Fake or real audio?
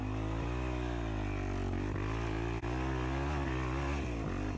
real